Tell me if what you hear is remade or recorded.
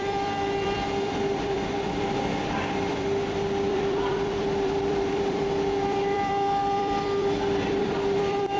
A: remade